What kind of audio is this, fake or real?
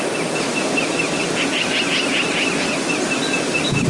real